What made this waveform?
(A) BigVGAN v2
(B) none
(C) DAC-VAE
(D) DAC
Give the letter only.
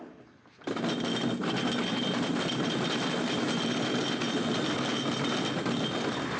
B